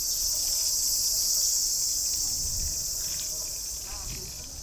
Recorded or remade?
recorded